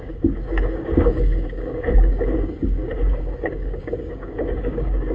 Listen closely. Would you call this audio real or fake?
fake